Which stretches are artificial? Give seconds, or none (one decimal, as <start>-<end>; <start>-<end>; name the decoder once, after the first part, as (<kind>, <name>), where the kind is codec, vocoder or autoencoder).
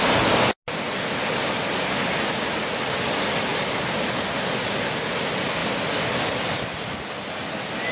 none